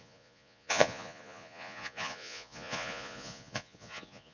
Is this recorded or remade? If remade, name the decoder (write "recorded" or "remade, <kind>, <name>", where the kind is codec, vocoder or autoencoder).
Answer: remade, vocoder, Vocos